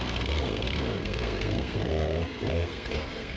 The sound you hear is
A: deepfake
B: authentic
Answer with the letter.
A